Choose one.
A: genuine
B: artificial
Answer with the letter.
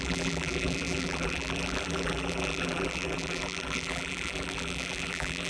B